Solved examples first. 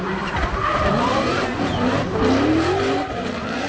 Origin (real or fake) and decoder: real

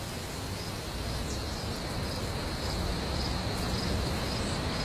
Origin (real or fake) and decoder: real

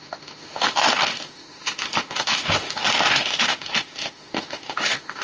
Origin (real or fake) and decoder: fake, autoencoder, DAC-VAE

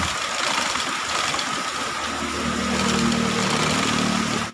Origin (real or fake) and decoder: real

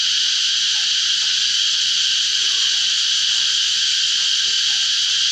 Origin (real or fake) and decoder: real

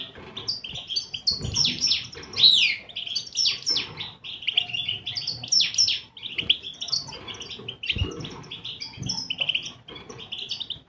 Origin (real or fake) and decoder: real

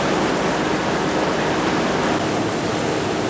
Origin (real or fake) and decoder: real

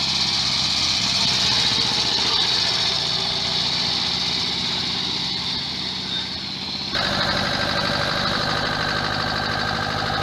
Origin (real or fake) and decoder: real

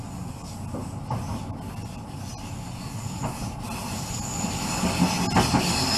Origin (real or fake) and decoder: real